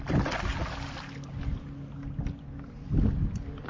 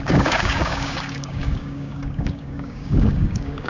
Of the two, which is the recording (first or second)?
first